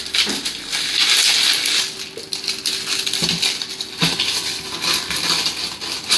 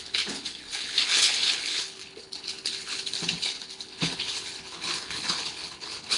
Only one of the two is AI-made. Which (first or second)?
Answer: second